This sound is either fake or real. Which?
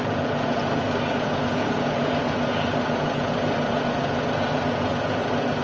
fake